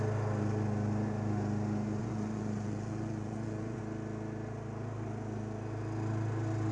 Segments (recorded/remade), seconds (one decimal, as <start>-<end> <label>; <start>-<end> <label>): 0.0-2.0 recorded; 2.0-3.8 remade; 3.8-6.7 recorded